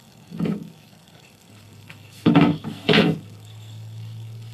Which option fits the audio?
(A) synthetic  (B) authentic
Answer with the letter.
A